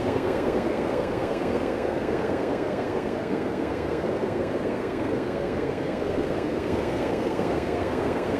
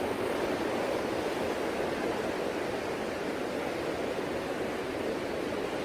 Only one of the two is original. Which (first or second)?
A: second